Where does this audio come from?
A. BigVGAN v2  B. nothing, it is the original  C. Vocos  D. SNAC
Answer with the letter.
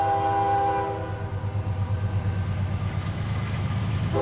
B